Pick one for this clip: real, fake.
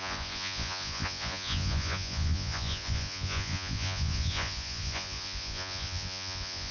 fake